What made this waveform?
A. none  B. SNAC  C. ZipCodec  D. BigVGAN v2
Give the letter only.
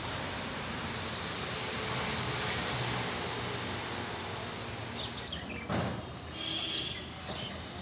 A